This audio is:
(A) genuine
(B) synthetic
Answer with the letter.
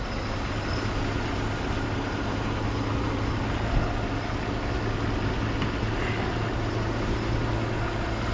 A